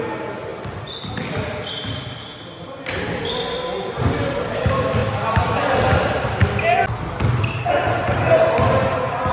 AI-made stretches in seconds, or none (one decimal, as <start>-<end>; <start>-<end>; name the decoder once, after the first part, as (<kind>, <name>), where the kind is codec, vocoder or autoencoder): none

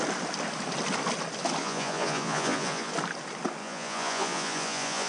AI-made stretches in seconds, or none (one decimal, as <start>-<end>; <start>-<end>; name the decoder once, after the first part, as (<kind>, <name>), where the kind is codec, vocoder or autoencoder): 1.6-2.9 (vocoder, Vocos); 3.6-5.1

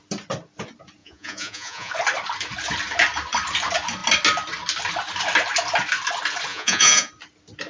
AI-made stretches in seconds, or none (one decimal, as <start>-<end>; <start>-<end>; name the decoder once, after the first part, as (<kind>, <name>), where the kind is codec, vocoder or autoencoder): 1.0-1.9 (vocoder, Vocos); 6.5-7.1

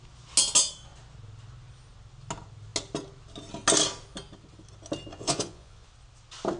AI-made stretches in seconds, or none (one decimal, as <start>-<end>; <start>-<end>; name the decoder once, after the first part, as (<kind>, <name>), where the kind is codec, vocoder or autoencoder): 5.1-5.9 (vocoder, Vocos)

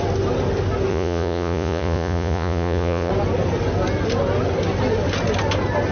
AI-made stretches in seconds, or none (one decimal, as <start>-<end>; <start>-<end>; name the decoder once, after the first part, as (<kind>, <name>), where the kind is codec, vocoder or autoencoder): 0.9-3.1 (vocoder, Vocos)

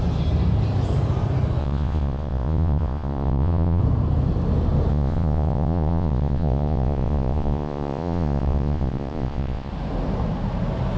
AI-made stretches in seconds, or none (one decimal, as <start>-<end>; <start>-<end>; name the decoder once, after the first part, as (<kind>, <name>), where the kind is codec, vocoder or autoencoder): 1.6-3.8 (vocoder, Vocos); 4.9-9.7

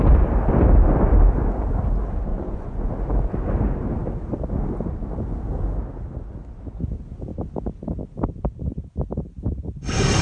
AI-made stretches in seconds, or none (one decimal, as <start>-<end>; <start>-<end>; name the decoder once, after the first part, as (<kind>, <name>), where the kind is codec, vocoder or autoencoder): 2.3-2.9 (vocoder, Vocos)

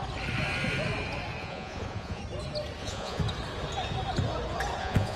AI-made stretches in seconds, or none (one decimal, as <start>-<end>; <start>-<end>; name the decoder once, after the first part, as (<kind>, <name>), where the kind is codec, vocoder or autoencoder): 1.4-2.2 (vocoder, Vocos); 2.8-3.2; 4.8-5.2